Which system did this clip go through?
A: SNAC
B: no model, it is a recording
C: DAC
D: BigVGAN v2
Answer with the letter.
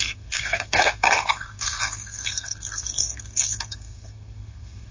A